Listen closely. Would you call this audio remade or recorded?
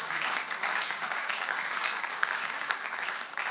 remade